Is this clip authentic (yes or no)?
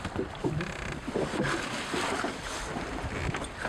yes